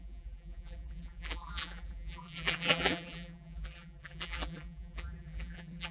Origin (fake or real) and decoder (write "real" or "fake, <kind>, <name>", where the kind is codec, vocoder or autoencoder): fake, vocoder, BigVGAN v2